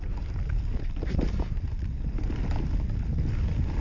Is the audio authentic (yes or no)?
yes